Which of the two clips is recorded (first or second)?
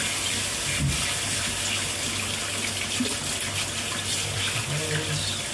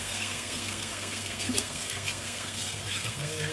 first